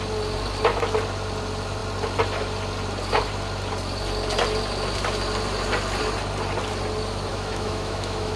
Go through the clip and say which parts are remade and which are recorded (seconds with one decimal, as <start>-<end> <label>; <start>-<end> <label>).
0.0-7.3 recorded; 7.3-8.4 remade